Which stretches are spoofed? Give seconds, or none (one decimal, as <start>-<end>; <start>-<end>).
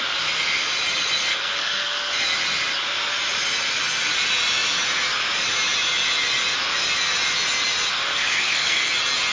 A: 1.3-2.1; 8.1-8.9